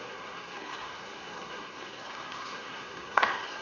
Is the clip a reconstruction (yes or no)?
yes